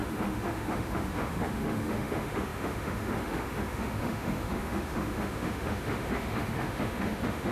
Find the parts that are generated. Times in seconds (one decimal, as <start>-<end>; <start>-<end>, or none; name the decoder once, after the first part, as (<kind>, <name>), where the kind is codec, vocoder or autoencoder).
0.0-7.5 (autoencoder, DAC-VAE)

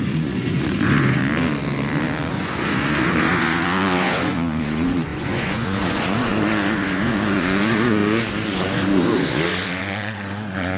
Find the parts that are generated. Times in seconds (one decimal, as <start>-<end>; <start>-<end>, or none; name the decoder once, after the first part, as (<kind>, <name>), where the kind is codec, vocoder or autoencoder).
0.0-1.2 (vocoder, Vocos); 2.3-10.8

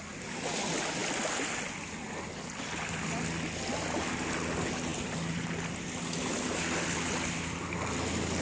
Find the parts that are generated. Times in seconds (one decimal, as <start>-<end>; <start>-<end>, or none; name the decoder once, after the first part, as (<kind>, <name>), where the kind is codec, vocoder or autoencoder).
none

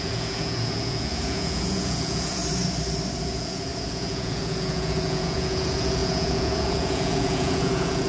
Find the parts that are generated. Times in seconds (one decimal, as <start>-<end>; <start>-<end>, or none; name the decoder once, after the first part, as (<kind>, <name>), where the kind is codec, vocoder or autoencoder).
0.0-2.4 (vocoder, Vocos); 3.2-8.1

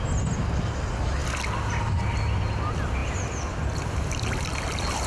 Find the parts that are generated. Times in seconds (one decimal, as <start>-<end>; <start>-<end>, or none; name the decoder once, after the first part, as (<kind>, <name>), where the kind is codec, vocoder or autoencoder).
none

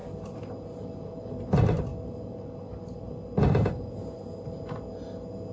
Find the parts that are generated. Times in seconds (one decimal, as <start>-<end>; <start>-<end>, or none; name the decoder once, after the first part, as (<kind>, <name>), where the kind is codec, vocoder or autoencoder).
none

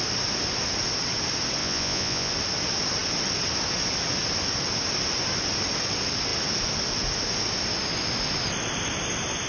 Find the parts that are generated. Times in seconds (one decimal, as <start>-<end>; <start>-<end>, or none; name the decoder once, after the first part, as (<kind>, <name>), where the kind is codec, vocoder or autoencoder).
1.6-2.3 (vocoder, Vocos)

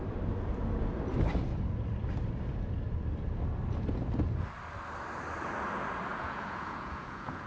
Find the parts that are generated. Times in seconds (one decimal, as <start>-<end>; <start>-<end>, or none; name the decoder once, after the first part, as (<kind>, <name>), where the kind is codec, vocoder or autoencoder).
6.1-7.5 (vocoder, Vocos)